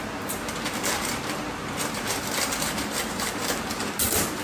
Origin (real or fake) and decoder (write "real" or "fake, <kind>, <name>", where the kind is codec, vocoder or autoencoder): fake, vocoder, BigVGAN v2